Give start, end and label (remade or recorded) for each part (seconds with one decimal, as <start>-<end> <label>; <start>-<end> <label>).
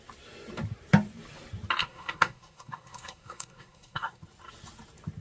0.0-1.8 recorded; 1.8-4.2 remade; 4.2-5.2 recorded